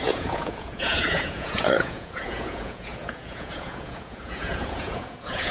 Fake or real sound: fake